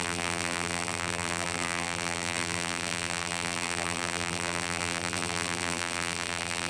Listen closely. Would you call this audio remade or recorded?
remade